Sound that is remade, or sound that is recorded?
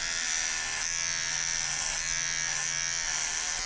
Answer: recorded